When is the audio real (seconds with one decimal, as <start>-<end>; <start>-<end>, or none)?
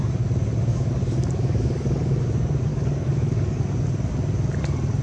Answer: 0.0-0.7; 2.2-2.7; 3.6-5.0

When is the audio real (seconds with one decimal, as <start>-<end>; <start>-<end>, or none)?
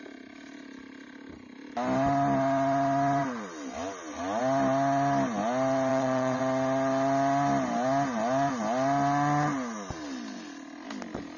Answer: 0.0-5.9; 6.4-11.4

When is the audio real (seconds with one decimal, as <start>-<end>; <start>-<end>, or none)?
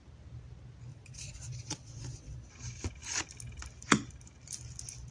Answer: 0.0-0.9; 2.5-5.1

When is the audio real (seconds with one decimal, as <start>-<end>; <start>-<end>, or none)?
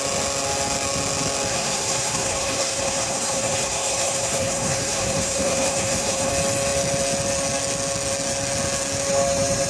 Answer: 0.0-1.5; 6.3-9.7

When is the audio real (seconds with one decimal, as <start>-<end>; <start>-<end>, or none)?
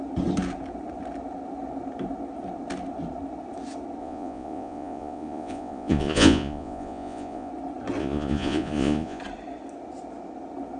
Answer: 0.0-4.0; 7.5-8.0; 9.2-10.8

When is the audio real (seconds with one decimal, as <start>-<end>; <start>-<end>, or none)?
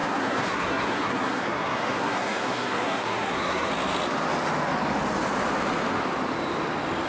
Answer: 3.7-7.1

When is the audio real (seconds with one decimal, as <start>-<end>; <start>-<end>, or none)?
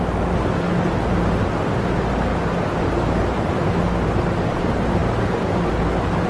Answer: 0.0-6.3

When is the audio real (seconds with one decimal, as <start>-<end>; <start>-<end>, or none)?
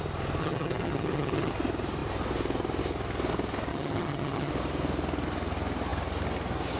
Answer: 0.0-0.4; 1.5-3.7; 4.5-6.8